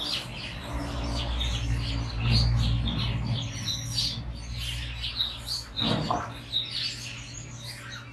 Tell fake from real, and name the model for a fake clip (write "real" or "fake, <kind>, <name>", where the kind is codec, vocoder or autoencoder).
real